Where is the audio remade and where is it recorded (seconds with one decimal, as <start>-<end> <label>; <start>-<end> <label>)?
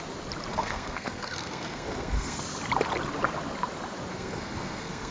0.0-0.5 recorded; 0.5-2.4 remade; 2.4-4.1 recorded; 4.1-5.1 remade